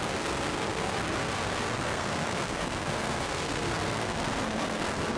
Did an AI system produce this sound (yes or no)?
yes